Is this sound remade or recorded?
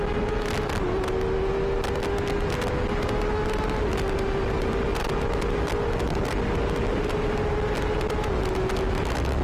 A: recorded